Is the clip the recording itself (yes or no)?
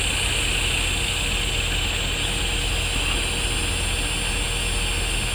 yes